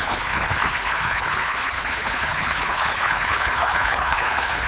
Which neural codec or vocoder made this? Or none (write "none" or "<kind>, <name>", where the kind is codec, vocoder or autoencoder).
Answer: codec, HILCodec